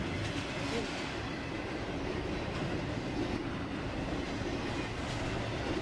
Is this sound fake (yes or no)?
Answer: no